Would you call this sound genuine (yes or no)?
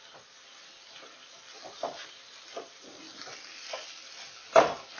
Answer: yes